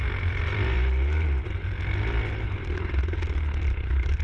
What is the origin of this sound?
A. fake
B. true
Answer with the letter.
A